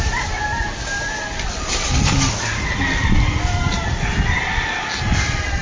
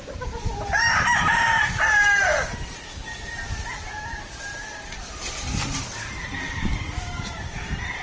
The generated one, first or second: second